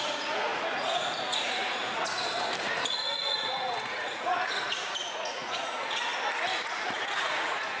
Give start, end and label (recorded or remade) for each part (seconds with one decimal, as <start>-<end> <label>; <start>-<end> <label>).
0.0-2.0 remade; 2.0-2.6 recorded; 2.6-6.1 remade; 6.1-6.6 recorded; 6.6-7.8 remade